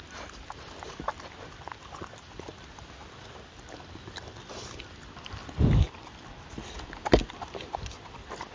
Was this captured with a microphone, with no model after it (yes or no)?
no